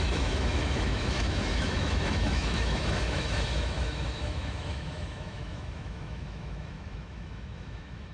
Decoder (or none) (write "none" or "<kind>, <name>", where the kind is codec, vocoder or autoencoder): autoencoder, DAC-VAE